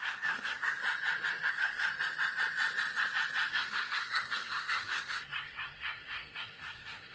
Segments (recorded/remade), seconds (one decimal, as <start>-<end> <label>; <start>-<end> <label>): 0.0-0.8 remade; 0.8-1.5 recorded; 1.5-1.9 remade; 1.9-3.5 recorded; 3.5-7.1 remade